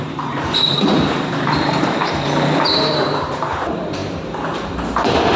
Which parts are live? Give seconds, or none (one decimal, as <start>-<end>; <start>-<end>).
none